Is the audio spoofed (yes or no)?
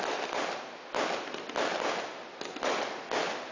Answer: no